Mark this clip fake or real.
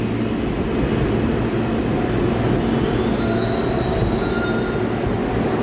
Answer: real